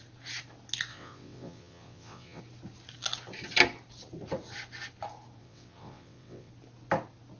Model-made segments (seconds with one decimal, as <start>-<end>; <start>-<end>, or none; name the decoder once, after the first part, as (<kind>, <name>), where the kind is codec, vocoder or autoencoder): 0.9-2.4 (vocoder, WaveNeXt); 5.4-6.5